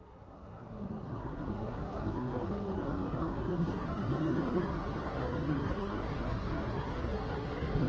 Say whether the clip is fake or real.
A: fake